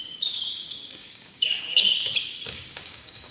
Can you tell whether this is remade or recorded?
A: remade